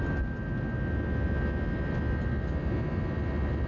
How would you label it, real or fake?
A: real